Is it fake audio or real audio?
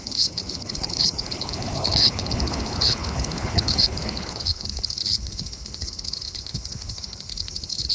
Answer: fake